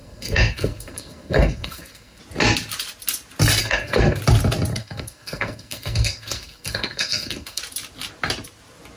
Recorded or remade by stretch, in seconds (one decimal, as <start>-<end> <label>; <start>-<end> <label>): 0.0-2.2 remade; 2.2-3.6 recorded; 3.6-4.2 remade; 4.2-4.7 recorded; 4.7-7.6 remade; 7.6-9.0 recorded